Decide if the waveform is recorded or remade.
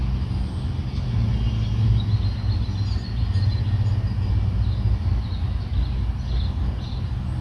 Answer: recorded